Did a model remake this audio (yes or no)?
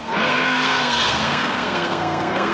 yes